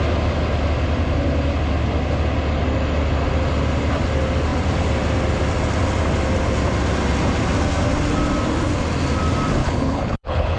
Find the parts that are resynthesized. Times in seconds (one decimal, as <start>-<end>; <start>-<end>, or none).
9.6-10.6